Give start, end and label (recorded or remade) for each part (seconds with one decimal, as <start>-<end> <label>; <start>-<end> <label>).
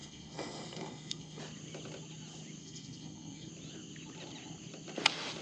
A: 0.0-1.4 remade; 1.4-2.6 recorded; 2.6-3.5 remade; 3.5-5.4 recorded